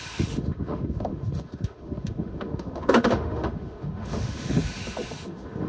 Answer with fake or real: fake